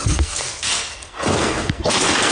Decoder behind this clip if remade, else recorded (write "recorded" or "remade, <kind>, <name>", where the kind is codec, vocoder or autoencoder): remade, codec, SNAC